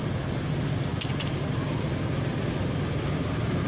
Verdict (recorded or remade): recorded